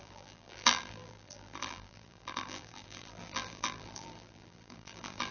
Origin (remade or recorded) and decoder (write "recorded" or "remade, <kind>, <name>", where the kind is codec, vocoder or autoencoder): remade, vocoder, BigVGAN v2